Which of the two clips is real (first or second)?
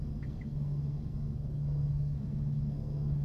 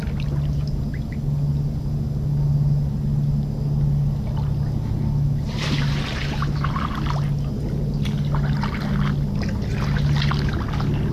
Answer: second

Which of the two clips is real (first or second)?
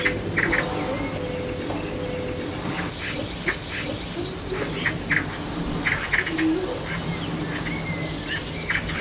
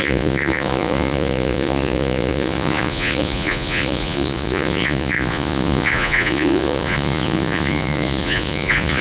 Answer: first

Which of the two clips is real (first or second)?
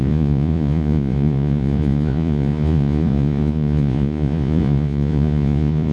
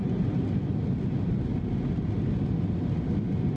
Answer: second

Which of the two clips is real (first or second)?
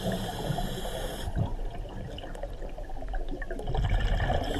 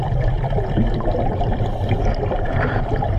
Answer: first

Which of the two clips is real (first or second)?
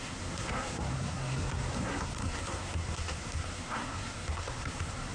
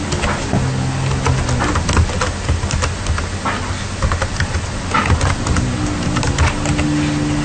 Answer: second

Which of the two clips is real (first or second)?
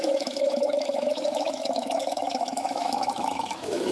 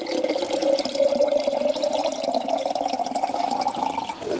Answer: second